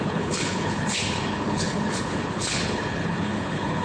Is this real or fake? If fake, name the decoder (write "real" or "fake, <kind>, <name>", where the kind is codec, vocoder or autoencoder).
fake, codec, HILCodec